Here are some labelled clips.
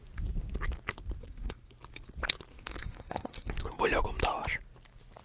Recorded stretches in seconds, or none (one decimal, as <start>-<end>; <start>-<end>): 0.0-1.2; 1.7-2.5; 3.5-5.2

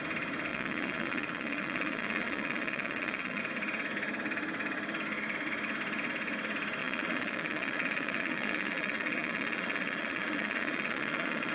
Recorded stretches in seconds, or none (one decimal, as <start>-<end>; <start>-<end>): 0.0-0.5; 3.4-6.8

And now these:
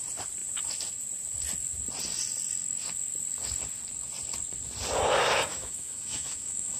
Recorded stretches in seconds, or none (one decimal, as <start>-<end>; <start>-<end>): 0.0-5.5

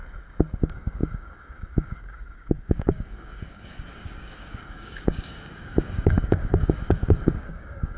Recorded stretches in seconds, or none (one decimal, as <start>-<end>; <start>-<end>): 0.0-0.6

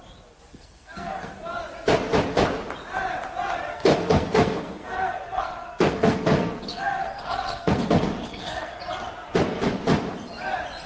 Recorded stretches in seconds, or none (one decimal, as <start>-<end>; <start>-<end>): 0.0-0.5; 1.3-3.7; 8.8-10.9

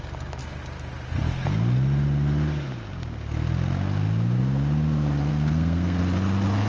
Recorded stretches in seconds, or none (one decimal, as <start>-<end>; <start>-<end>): 0.0-5.3; 6.0-6.7

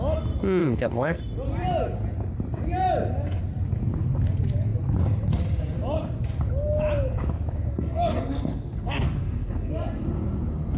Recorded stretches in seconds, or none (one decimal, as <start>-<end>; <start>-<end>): 0.0-0.6; 1.2-7.7; 9.7-10.8